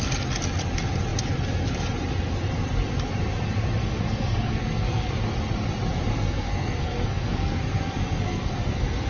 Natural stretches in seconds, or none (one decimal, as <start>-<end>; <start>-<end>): 0.0-3.8; 5.1-6.1